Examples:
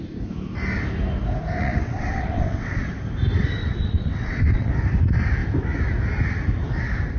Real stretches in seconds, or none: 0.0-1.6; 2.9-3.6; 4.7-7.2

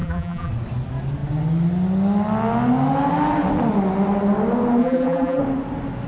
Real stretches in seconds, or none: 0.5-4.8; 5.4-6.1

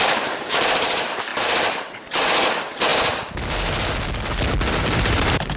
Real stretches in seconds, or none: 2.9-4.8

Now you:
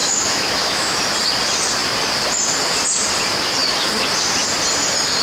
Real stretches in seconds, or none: 1.0-5.2